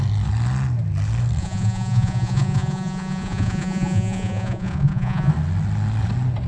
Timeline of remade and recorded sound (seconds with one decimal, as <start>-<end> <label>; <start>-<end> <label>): 0.0-1.4 recorded; 1.4-5.3 remade; 5.3-6.5 recorded